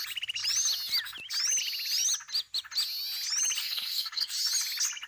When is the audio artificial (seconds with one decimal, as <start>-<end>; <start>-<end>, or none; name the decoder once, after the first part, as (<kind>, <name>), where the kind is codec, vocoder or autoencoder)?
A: 3.6-4.3 (codec, SNAC)